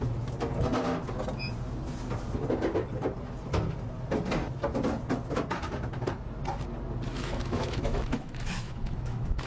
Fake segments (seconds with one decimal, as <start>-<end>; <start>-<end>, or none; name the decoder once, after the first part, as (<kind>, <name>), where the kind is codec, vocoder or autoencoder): 7.1-9.5 (autoencoder, DAC-VAE)